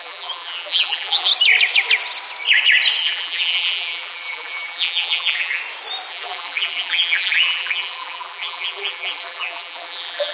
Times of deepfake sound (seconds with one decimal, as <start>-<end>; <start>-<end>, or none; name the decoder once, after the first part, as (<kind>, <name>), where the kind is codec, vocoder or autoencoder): 0.0-1.3 (vocoder, BigVGAN v2); 3.0-5.6; 6.1-10.3

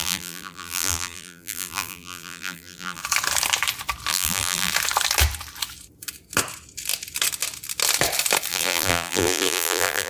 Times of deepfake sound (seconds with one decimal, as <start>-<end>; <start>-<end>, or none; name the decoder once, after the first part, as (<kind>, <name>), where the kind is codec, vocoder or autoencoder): 0.0-3.0 (vocoder, BigVGAN v2); 4.1-4.7; 8.5-10.1

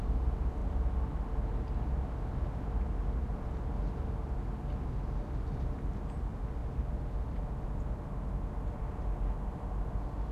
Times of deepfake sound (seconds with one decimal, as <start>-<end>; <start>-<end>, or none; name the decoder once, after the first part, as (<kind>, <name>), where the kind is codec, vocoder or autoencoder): none

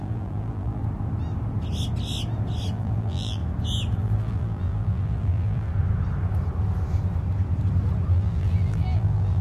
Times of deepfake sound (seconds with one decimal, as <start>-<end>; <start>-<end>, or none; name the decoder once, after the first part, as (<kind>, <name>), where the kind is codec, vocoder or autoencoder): 0.0-0.8 (vocoder, BigVGAN v2); 2.7-3.4; 4.0-5.7; 8.1-9.4

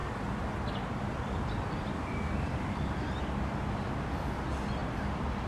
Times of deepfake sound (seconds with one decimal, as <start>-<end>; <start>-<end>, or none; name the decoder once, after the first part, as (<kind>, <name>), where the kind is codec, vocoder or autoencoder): 0.0-3.2 (vocoder, BigVGAN v2)

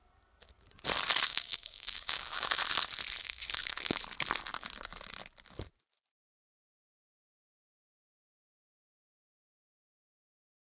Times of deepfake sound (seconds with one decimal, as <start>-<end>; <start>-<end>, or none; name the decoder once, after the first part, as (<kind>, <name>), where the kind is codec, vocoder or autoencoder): 1.3-2.6 (codec, DAC); 3.2-4.0